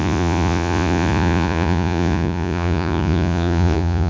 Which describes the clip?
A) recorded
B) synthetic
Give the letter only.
B